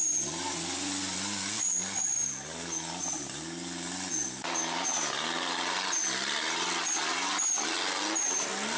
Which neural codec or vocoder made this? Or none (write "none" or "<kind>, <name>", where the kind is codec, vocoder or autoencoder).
none